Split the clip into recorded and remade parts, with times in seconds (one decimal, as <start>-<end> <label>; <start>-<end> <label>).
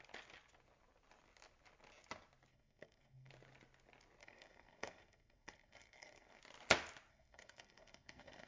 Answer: 0.0-2.5 recorded; 2.5-3.3 remade; 3.3-4.2 recorded; 4.2-6.4 remade; 6.4-7.1 recorded; 7.1-8.5 remade